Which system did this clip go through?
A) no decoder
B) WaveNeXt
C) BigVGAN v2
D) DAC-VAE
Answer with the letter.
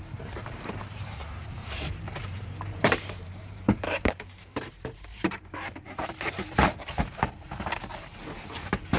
C